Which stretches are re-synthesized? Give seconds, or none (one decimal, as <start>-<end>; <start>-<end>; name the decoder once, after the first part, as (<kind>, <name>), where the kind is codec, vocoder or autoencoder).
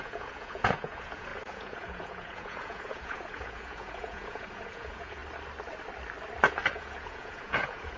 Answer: 0.0-5.2 (vocoder, Vocos); 6.7-8.0